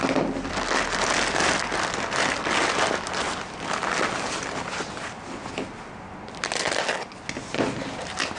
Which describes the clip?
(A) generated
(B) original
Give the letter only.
B